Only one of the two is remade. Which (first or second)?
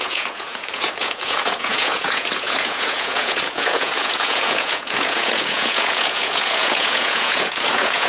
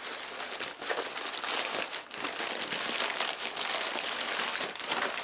first